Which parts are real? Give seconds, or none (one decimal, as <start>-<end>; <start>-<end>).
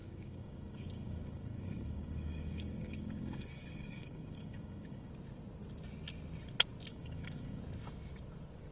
5.1-6.9; 7.6-8.7